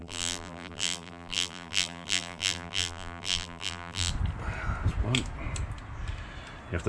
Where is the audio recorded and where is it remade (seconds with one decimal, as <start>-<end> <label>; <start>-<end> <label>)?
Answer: 0.0-4.1 remade; 4.1-6.9 recorded